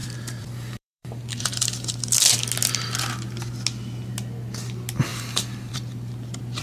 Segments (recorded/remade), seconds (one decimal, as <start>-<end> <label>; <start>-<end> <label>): 0.0-2.0 remade; 2.0-5.1 recorded; 5.1-6.6 remade